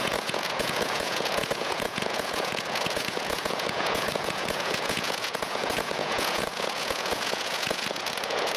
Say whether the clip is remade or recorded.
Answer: remade